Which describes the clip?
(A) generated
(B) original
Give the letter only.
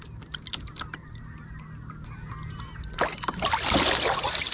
B